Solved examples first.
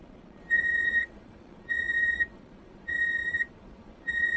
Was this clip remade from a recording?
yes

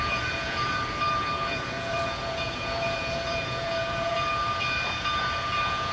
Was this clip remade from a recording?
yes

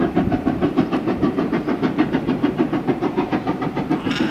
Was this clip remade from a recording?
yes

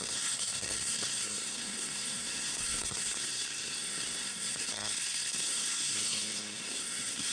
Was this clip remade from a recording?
yes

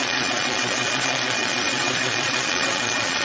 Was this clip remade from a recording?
yes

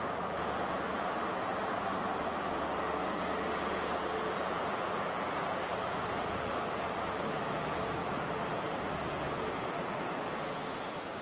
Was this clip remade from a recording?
yes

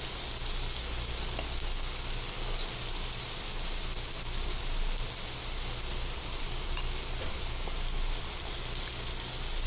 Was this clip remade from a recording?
no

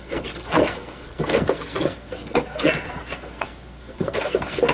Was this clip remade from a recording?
yes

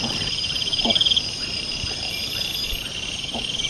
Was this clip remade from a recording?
yes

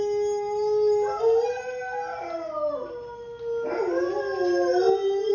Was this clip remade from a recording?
no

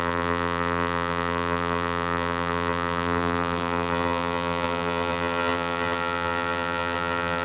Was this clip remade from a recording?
yes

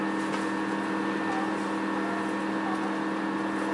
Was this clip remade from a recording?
no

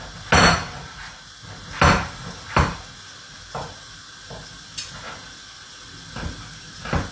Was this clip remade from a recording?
no